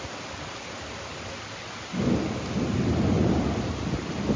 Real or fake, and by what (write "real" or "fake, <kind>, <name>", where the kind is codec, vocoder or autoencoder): real